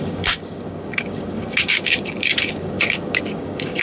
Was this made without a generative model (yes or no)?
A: no